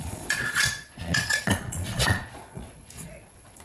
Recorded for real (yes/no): no